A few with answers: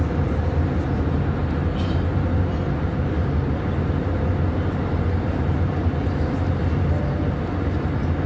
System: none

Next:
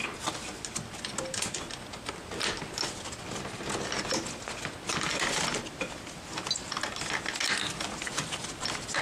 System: none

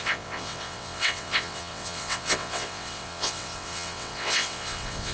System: vocoder, WaveNeXt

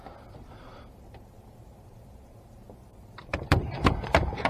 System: vocoder, BigVGAN v2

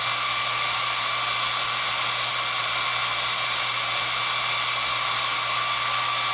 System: none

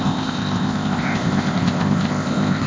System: codec, ZipCodec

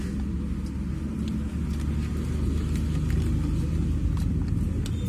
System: none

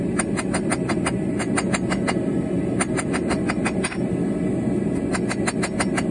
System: none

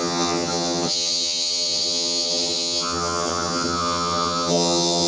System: vocoder, HiFi-GAN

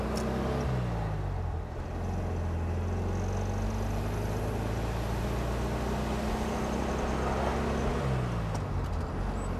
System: none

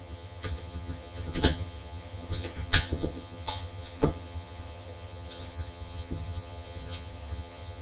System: vocoder, HiFi-GAN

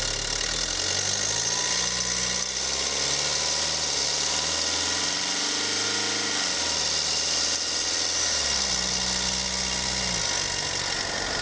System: none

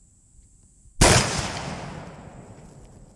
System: none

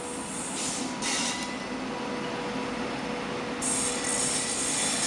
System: none